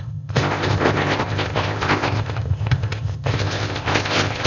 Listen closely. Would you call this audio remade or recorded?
remade